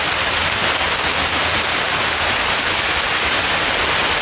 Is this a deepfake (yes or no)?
no